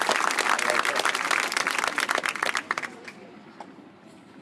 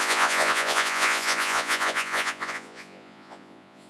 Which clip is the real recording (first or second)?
first